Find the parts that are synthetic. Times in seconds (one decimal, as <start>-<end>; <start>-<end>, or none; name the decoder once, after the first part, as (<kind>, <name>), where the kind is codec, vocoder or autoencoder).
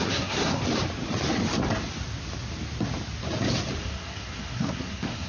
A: 0.0-0.6 (codec, SNAC); 3.8-5.3